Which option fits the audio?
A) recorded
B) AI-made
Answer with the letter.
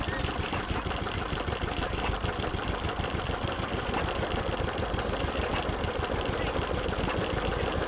A